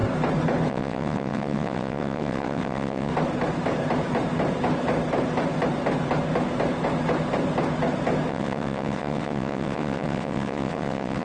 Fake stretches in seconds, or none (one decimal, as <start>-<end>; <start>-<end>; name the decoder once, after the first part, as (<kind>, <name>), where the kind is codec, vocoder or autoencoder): 0.7-3.1 (vocoder, WaveNeXt); 8.3-11.2